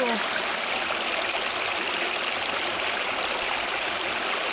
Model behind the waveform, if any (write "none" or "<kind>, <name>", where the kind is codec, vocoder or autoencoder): none